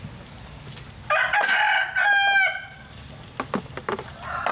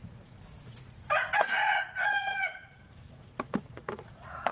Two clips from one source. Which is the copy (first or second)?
second